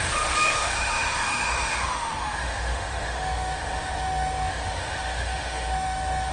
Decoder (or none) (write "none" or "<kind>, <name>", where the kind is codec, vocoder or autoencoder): autoencoder, DAC-VAE